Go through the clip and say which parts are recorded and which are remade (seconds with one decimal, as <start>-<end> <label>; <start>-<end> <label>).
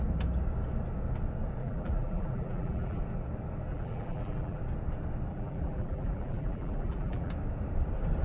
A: 0.0-1.6 recorded; 1.6-3.0 remade; 3.0-3.7 recorded; 3.7-4.6 remade; 4.6-5.3 recorded; 5.3-7.3 remade; 7.3-8.2 recorded